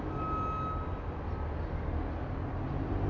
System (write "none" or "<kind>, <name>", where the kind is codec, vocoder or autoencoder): none